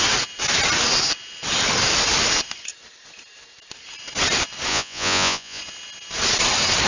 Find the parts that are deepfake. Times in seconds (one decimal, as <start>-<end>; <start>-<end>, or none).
4.7-5.6